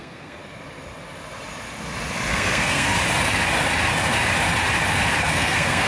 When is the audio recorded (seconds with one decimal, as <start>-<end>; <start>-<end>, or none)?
0.4-2.3; 2.9-5.2

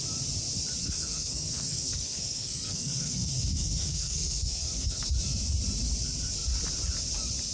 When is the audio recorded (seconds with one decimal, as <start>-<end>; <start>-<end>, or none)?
0.0-0.8; 5.0-7.5

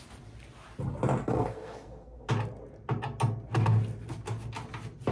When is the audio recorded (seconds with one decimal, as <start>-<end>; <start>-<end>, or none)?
0.0-1.2; 2.3-5.1

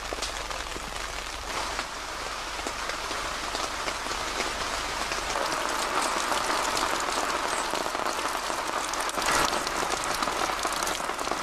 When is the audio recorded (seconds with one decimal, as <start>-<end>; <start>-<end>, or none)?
0.0-11.4

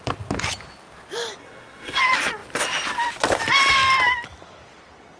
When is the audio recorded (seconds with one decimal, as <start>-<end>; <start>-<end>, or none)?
0.0-1.4; 2.0-5.2

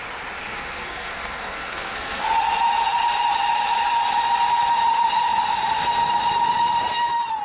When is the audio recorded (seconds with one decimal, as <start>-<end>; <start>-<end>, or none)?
0.0-0.4; 2.2-7.4